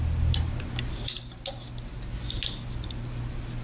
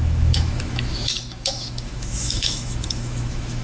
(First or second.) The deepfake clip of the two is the second